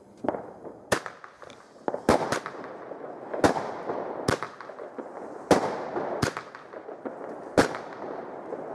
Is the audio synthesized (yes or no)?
no